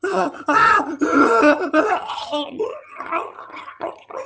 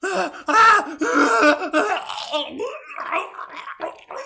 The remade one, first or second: first